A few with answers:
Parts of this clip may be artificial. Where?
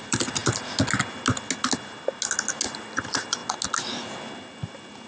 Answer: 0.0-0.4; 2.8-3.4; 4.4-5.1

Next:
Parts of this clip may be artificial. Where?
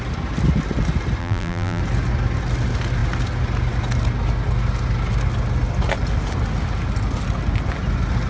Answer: 1.2-1.8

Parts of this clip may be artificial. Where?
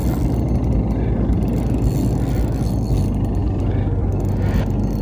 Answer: none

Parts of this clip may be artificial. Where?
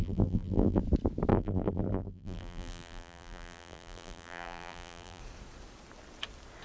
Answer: 0.0-0.8; 1.3-5.2